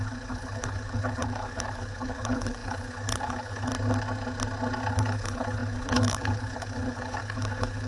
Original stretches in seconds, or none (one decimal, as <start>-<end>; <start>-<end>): 3.7-4.9